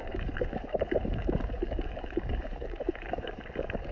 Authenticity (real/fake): fake